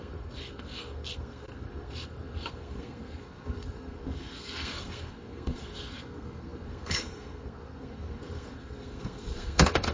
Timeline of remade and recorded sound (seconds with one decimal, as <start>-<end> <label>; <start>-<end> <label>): 0.0-9.9 remade